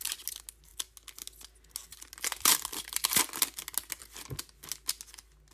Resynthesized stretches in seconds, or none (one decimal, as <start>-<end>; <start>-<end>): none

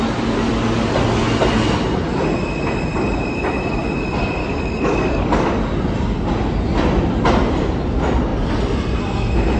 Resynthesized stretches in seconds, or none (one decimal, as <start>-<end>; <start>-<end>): 4.4-5.5

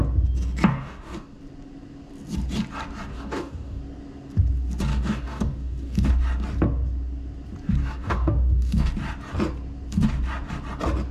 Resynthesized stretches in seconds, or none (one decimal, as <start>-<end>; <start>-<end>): 0.7-1.4; 3.1-3.8; 4.9-6.1; 7.8-8.9

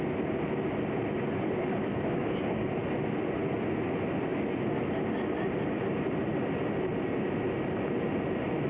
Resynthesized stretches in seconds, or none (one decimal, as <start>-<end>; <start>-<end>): 1.9-2.8

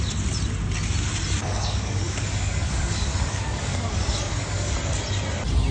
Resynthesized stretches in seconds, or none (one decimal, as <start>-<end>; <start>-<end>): 1.4-4.7

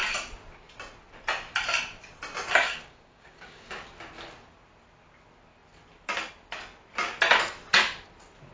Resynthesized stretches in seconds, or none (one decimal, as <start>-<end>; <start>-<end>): 2.6-3.8

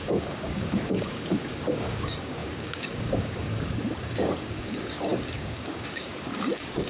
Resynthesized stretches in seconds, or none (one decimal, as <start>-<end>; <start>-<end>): 0.0-6.9

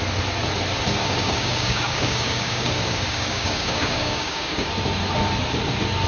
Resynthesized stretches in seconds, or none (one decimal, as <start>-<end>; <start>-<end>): 1.0-4.7